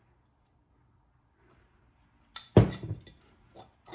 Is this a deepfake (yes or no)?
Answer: no